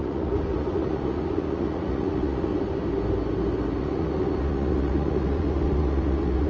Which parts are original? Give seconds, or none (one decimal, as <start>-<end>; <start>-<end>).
2.5-3.8